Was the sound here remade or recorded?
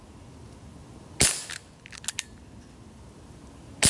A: recorded